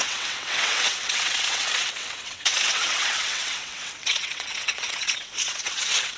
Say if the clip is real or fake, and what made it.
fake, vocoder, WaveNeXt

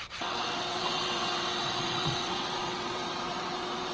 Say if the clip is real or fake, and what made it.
fake, vocoder, WaveNeXt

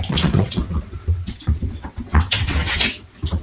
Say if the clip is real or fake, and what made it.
fake, vocoder, WaveNeXt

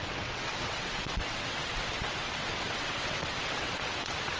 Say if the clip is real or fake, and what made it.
fake, vocoder, WaveNeXt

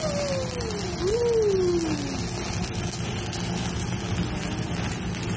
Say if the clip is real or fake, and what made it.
real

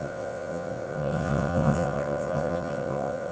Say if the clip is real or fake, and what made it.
fake, vocoder, WaveNeXt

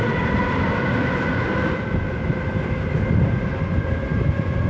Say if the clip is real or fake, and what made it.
real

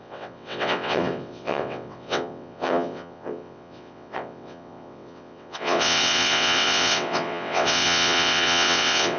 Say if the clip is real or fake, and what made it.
fake, vocoder, WaveNeXt